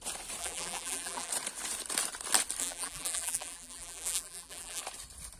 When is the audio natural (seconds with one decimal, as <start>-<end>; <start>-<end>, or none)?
0.0-0.4; 1.3-2.6; 4.8-5.4